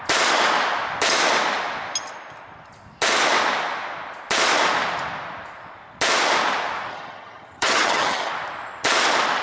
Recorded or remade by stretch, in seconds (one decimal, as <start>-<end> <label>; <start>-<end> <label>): 0.0-6.9 recorded; 6.9-8.3 remade; 8.3-9.4 recorded